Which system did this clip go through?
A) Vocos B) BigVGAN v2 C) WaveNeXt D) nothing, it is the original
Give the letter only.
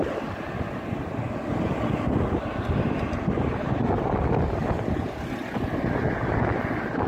D